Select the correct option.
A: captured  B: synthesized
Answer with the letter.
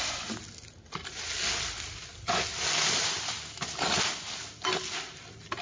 A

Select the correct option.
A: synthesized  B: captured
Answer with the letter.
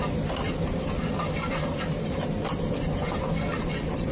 B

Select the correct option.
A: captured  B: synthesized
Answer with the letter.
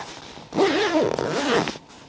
A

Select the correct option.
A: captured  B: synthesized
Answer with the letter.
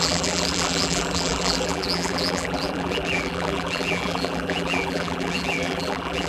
B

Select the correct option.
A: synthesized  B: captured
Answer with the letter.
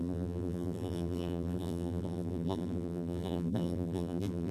A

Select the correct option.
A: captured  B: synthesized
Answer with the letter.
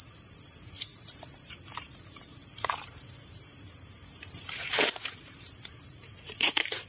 B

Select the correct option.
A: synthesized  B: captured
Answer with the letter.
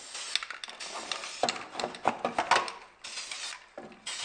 B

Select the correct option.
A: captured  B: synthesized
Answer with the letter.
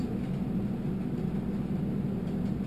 A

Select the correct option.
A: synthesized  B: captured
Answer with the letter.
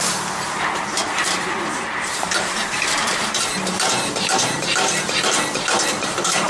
A